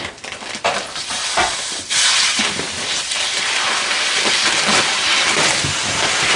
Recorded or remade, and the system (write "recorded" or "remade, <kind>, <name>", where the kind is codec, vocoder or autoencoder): remade, vocoder, BigVGAN v2